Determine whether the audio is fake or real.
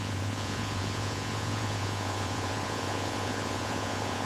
fake